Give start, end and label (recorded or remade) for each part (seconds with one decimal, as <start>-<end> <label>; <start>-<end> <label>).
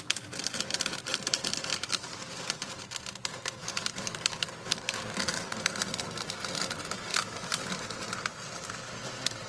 0.0-1.7 recorded; 1.7-2.4 remade; 2.4-3.6 recorded; 3.6-5.6 remade; 5.6-7.1 recorded; 7.1-7.8 remade; 7.8-9.5 recorded